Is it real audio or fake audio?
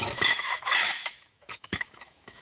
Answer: fake